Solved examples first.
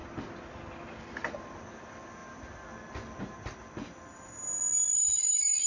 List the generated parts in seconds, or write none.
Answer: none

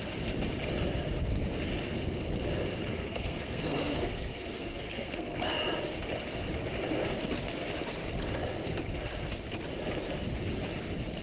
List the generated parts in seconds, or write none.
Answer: 2.9-5.4 (codec, SNAC)

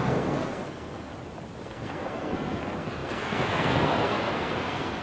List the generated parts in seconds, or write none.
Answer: 0.0-1.1 (codec, SNAC); 1.6-5.0

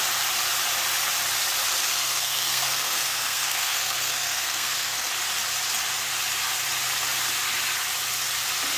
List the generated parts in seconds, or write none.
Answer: 1.9-5.1 (codec, SNAC)

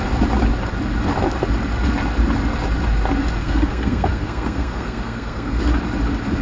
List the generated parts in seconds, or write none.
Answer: 3.4-5.6 (codec, SNAC)

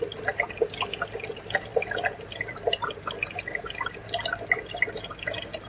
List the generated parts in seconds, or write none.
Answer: none

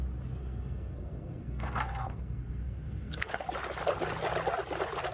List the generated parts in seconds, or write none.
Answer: 0.4-3.5 (codec, SNAC)